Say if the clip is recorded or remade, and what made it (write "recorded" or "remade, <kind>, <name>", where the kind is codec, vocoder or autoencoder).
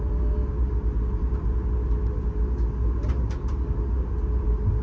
recorded